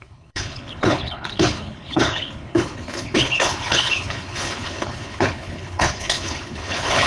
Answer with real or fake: fake